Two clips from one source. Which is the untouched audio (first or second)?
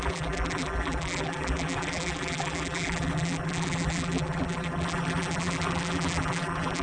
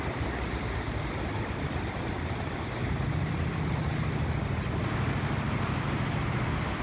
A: second